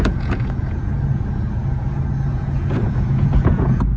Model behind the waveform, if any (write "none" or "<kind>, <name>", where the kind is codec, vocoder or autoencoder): vocoder, Vocos